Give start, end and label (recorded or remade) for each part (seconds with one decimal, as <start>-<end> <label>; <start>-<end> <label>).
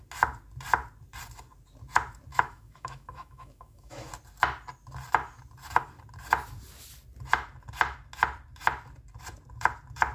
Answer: 0.0-2.3 recorded; 2.3-4.1 remade; 4.1-10.1 recorded